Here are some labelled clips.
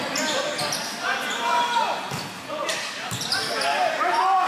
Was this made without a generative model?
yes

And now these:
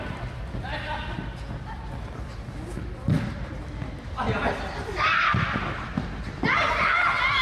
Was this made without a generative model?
yes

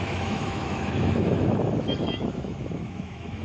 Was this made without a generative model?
no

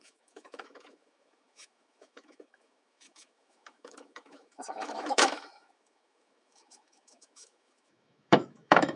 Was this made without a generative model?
no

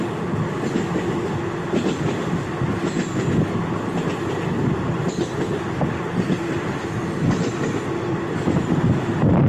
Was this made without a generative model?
yes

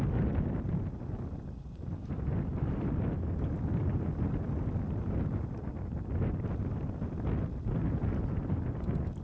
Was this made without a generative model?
yes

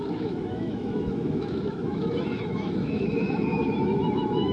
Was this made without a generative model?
no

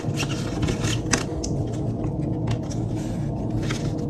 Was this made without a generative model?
yes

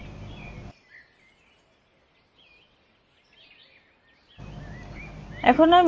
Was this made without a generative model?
yes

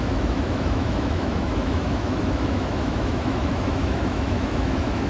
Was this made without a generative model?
no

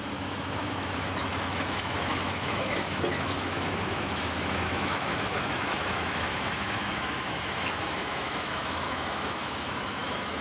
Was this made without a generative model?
no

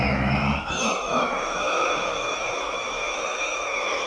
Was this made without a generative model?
no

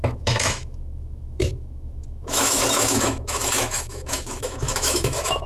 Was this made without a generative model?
no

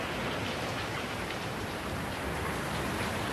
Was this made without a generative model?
yes